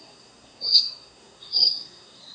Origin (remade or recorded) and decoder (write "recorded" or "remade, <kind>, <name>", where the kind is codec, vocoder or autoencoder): remade, codec, SNAC